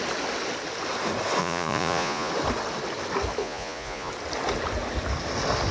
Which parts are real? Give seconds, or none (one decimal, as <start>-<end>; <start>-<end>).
0.0-1.4; 2.3-3.4; 4.1-5.7